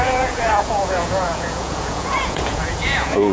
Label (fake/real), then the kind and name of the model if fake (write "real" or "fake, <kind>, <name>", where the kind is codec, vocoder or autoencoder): fake, vocoder, Vocos